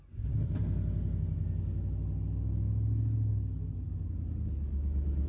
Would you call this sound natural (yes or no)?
yes